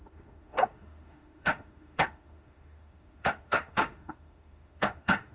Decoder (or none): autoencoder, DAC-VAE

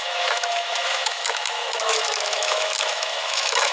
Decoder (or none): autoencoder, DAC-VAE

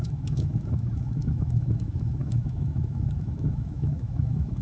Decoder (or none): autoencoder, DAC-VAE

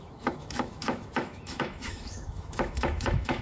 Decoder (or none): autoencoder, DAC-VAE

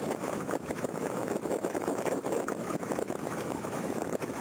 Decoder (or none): autoencoder, DAC-VAE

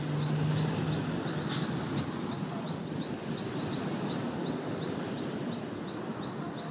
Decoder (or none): none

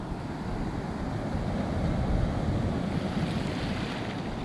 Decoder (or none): none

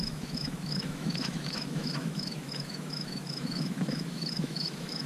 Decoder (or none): autoencoder, DAC-VAE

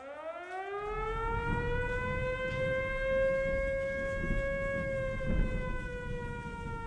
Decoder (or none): none